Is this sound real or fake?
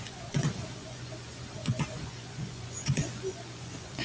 fake